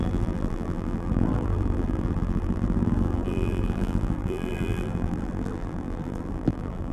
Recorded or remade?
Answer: remade